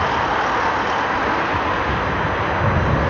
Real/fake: real